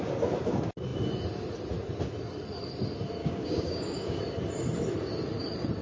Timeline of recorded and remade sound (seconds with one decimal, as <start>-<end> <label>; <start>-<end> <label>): 0.0-3.2 recorded; 3.2-4.2 remade; 4.2-5.8 recorded

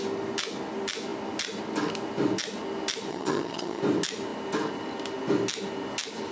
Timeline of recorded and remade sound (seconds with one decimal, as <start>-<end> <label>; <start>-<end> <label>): 0.0-3.1 recorded; 3.1-3.8 remade; 3.8-6.3 recorded

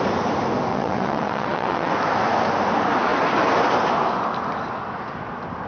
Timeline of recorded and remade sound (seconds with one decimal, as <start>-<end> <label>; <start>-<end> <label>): 0.0-0.7 recorded; 0.7-1.9 remade; 1.9-5.7 recorded

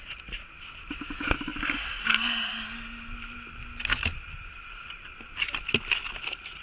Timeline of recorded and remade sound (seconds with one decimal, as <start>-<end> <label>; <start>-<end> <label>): 0.0-6.6 recorded

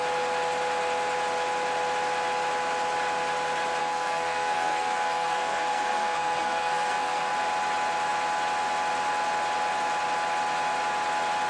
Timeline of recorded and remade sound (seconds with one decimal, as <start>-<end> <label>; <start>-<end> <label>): 0.0-3.8 recorded; 3.8-7.3 remade; 7.3-11.5 recorded